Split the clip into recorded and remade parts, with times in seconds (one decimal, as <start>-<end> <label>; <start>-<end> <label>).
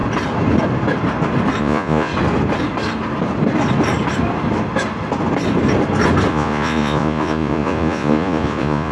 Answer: 0.0-1.6 recorded; 1.6-2.1 remade; 2.1-6.3 recorded; 6.3-8.9 remade